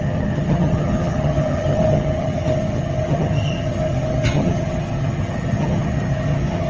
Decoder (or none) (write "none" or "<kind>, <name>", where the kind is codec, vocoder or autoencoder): vocoder, HiFi-GAN